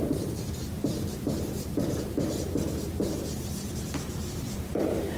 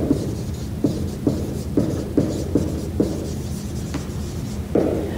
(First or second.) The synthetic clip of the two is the first